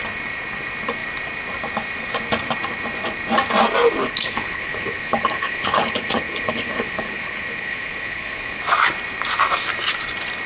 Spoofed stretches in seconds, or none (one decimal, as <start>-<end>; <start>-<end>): 4.0-8.6